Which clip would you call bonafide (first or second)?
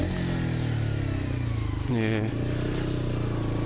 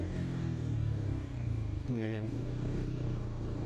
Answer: first